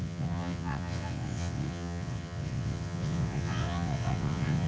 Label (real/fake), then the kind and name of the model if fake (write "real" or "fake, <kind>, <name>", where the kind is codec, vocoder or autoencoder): fake, vocoder, WaveNeXt